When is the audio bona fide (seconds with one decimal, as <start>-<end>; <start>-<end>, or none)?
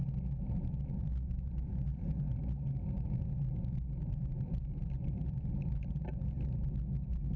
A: 0.0-7.4